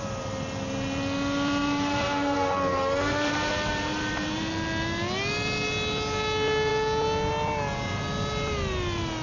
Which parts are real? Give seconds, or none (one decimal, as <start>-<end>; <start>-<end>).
0.0-1.6; 4.5-9.2